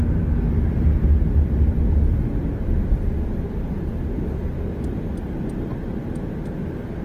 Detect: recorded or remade recorded